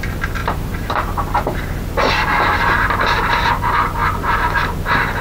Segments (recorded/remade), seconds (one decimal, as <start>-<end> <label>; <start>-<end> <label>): 0.0-0.4 recorded; 0.4-3.5 remade; 3.5-4.0 recorded; 4.0-4.8 remade; 4.8-5.2 recorded